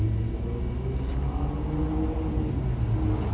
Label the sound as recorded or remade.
recorded